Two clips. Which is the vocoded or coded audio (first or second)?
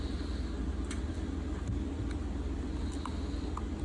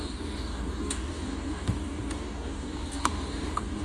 second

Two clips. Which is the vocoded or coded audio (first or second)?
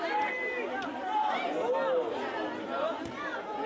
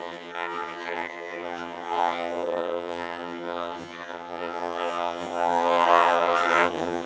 second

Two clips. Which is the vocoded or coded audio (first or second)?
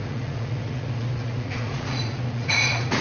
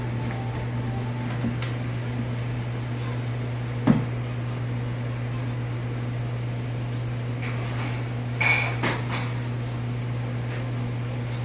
first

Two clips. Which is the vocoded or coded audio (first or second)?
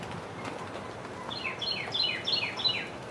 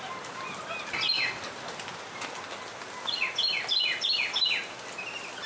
first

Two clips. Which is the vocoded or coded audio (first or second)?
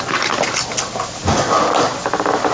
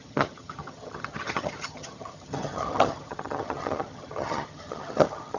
second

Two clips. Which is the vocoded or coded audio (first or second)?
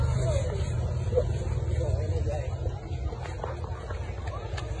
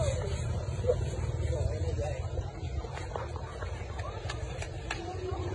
second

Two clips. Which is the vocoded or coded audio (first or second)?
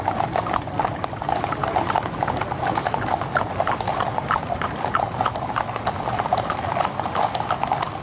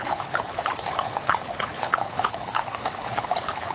second